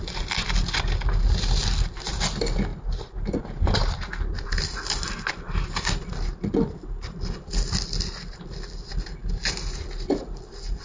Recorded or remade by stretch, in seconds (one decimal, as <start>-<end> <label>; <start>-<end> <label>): 0.0-10.8 recorded